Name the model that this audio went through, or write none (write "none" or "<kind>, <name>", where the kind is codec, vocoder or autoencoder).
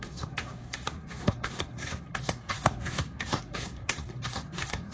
codec, SNAC